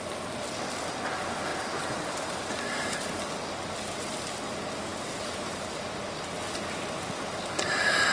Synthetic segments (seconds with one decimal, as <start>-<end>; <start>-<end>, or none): 1.5-3.2; 4.9-5.9